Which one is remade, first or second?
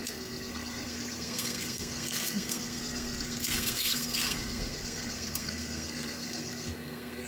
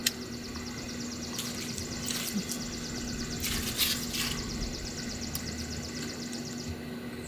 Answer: first